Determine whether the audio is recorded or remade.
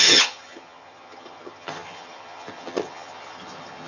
remade